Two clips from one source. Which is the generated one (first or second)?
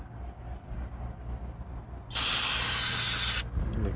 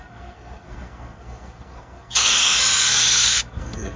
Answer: second